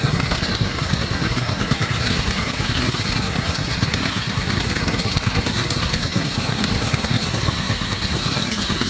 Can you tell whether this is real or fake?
fake